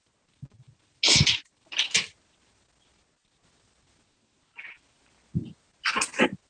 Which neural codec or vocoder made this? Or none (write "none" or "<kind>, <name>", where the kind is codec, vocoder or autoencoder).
none